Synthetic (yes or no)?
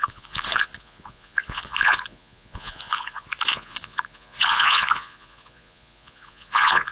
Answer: yes